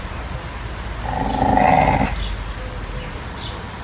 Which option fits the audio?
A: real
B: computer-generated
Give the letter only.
A